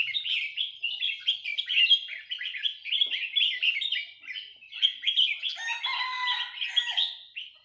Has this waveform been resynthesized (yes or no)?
no